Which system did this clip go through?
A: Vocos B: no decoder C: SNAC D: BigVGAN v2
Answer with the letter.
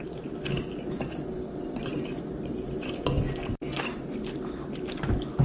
B